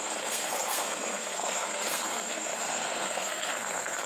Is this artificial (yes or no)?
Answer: yes